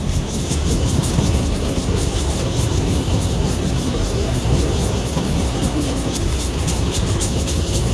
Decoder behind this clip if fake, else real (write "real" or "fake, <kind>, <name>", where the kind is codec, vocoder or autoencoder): fake, codec, SNAC